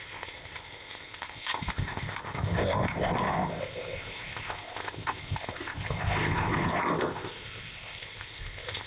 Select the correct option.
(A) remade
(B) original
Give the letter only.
A